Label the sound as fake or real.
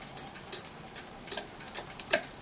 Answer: real